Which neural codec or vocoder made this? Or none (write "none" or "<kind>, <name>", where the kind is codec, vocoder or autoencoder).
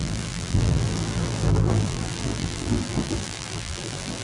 vocoder, BigVGAN v2